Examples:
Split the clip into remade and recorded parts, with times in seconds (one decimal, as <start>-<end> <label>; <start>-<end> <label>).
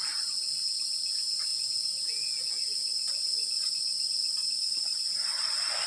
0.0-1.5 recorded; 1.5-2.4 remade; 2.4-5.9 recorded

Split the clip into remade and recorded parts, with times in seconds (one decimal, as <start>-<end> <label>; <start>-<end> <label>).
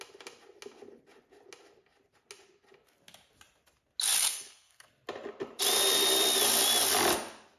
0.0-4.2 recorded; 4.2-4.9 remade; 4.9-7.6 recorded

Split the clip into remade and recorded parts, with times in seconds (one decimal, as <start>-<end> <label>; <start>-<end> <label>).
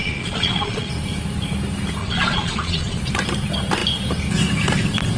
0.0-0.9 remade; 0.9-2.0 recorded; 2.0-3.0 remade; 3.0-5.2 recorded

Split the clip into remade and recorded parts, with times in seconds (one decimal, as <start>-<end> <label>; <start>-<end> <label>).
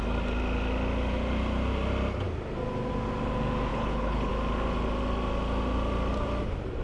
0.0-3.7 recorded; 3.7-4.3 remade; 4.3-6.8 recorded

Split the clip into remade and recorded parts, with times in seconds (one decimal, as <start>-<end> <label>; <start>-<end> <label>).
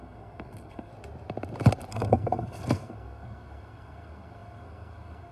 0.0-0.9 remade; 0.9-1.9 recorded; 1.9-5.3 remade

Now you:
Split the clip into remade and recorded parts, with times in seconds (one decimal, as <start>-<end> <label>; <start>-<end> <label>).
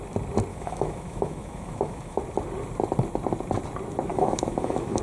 0.0-0.5 recorded; 0.5-2.2 remade; 2.2-4.1 recorded; 4.1-5.0 remade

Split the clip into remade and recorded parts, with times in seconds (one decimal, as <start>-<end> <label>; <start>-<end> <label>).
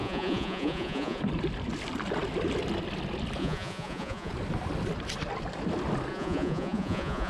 0.0-1.2 remade; 1.2-3.4 recorded; 3.4-4.3 remade; 4.3-6.1 recorded; 6.1-7.3 remade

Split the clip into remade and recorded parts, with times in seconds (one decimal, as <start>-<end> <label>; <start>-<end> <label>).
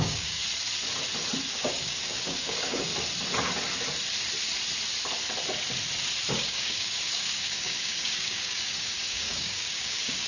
0.0-0.4 remade; 0.4-1.5 recorded; 1.5-2.9 remade; 2.9-6.3 recorded; 6.3-10.3 remade